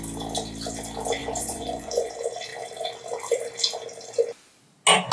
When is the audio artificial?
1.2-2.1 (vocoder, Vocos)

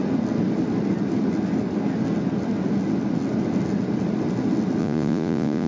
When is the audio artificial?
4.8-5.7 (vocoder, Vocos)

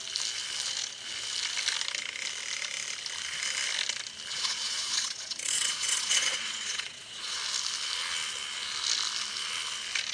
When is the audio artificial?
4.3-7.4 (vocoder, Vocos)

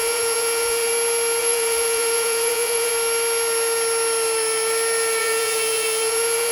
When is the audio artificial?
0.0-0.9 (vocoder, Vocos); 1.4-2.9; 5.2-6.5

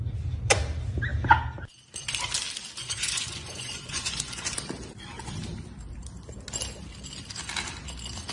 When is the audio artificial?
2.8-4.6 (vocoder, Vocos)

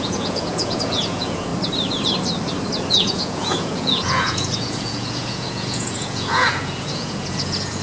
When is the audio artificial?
0.0-1.5 (vocoder, Vocos); 2.9-7.8

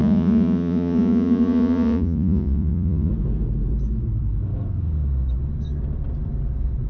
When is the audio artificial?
0.0-3.1 (vocoder, Vocos)

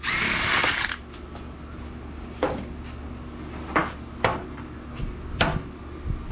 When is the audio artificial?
none